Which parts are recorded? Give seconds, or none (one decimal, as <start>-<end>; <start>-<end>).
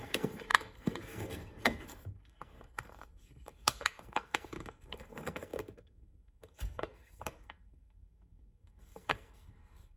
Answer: none